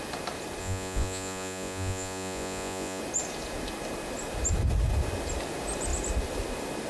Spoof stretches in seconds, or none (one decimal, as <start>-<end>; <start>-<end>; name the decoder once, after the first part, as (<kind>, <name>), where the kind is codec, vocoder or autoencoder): 0.6-3.0 (vocoder, Vocos)